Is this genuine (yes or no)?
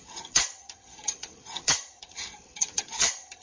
no